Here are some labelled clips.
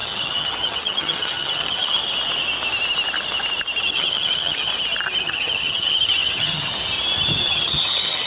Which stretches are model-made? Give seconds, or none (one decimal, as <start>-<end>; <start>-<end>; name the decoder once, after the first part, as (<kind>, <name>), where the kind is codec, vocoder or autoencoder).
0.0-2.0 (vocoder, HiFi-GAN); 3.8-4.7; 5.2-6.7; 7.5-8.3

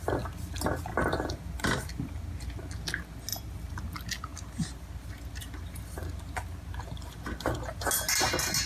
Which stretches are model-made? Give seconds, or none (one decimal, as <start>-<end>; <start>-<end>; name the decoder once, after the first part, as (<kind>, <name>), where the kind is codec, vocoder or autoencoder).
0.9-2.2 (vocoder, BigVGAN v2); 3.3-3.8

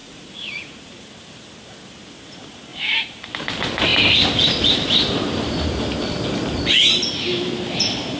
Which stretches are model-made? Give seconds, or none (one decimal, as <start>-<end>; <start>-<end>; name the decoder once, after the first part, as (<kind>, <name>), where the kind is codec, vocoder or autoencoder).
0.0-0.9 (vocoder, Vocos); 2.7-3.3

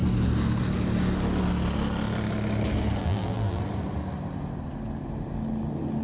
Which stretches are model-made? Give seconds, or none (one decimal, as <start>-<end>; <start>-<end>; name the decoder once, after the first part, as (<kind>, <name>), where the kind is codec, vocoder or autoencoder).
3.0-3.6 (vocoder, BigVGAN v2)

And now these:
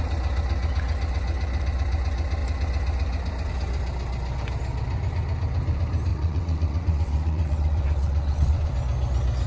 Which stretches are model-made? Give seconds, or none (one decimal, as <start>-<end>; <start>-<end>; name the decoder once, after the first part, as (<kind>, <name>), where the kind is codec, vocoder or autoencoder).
6.1-8.7 (vocoder, WaveNeXt)